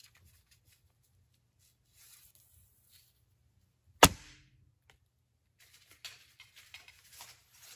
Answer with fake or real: real